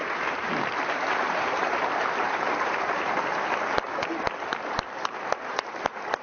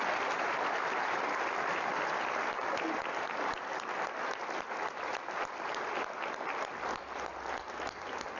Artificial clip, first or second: first